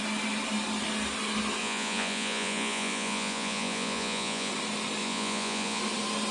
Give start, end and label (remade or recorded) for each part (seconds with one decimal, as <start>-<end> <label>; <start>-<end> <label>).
0.0-1.6 recorded; 1.6-4.5 remade; 4.5-5.0 recorded; 5.0-5.8 remade; 5.8-6.3 recorded